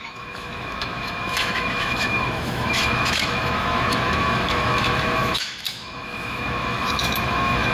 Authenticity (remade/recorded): remade